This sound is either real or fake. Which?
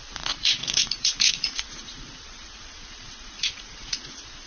fake